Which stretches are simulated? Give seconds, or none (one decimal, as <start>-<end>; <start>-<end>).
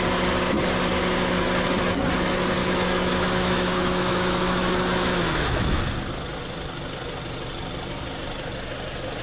2.6-5.8